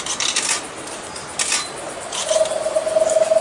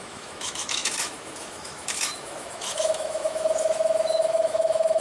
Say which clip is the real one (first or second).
first